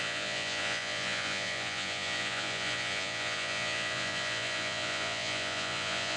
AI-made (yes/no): yes